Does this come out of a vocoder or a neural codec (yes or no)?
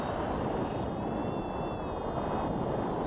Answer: yes